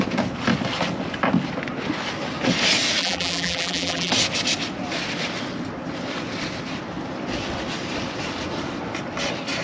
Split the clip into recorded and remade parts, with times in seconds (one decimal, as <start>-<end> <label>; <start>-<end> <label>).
0.0-3.0 recorded; 3.0-4.1 remade; 4.1-9.6 recorded